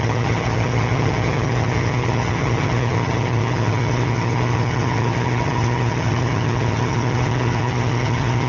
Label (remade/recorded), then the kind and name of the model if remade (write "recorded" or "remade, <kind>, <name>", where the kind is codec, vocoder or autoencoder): remade, vocoder, HiFi-GAN